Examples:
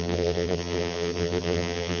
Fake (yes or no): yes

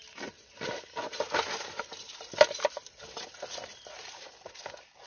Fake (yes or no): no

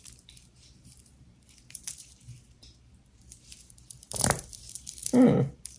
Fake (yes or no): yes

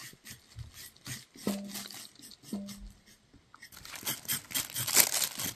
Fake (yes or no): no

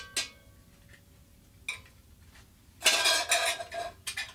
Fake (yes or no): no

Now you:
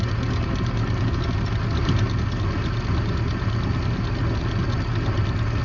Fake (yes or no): no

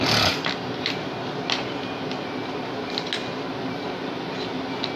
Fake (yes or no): no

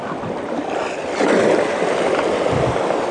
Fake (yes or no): no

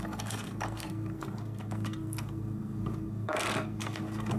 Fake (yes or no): yes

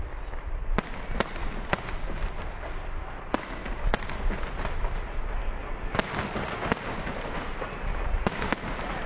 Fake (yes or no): no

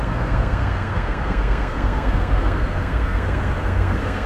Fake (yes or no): yes